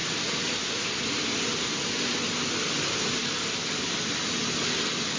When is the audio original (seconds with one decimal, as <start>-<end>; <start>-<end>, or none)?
0.0-5.2